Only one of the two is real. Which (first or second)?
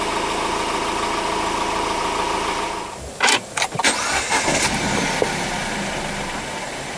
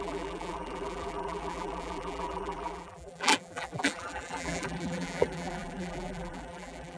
first